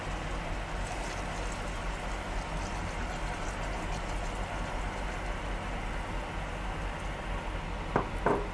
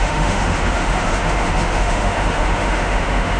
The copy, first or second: second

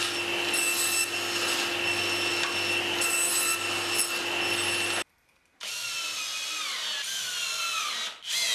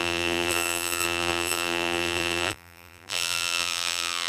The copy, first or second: second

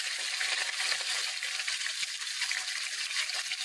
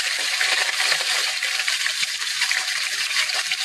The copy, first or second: second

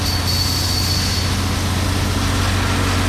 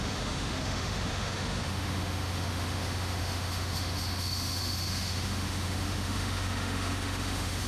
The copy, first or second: second